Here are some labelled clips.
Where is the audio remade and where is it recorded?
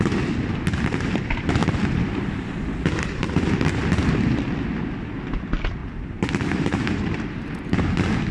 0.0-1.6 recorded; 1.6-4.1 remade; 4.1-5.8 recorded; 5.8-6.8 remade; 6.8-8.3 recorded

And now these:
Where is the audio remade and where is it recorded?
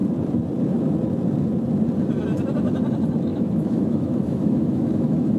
0.0-3.3 recorded; 3.3-5.4 remade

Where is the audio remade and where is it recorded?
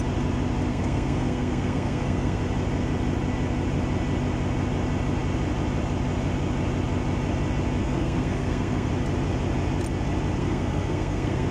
0.0-0.7 recorded; 0.7-2.4 remade; 2.4-7.8 recorded; 7.8-8.9 remade; 8.9-10.4 recorded; 10.4-11.5 remade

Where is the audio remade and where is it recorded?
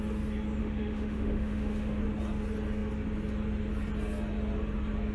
0.0-0.6 recorded; 0.6-2.0 remade; 2.0-5.1 recorded